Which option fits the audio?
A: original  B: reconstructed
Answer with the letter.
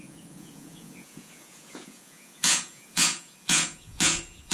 B